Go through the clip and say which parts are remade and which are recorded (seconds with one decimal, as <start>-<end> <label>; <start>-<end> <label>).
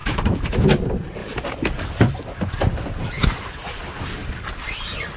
0.0-0.6 remade; 0.6-5.2 recorded